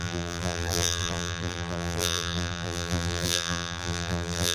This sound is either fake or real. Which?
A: fake